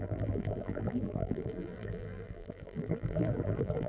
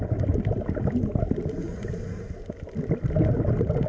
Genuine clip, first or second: second